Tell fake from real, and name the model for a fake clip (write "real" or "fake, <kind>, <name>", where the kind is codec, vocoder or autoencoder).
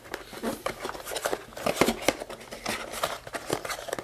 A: real